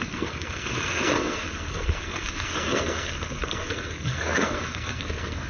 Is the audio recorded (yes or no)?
no